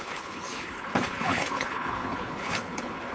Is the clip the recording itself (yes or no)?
no